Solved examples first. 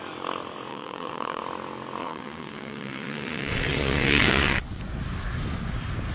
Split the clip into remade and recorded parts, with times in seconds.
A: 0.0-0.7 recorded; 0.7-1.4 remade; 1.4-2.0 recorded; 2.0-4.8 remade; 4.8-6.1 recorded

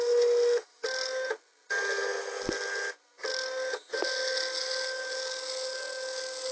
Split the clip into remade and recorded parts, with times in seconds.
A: 0.0-6.5 recorded

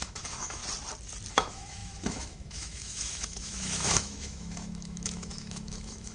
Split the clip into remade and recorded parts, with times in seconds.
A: 0.0-0.6 remade; 0.6-1.3 recorded; 1.3-6.1 remade